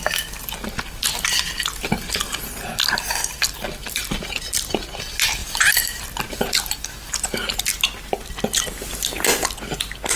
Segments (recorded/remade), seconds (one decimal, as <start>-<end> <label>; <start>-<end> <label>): 0.0-5.4 recorded; 5.4-6.0 remade; 6.0-10.2 recorded